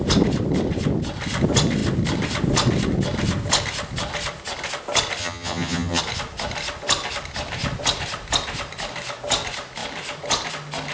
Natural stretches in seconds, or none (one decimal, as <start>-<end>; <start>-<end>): 0.0-5.2; 6.0-10.9